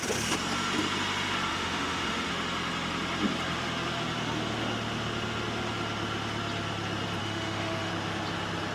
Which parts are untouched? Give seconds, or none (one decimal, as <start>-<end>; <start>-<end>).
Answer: 0.0-1.5; 2.3-7.2; 7.9-8.7